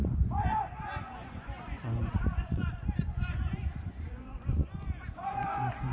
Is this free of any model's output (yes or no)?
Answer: no